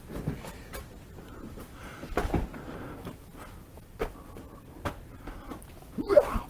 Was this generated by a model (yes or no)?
no